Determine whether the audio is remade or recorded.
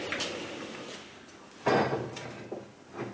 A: recorded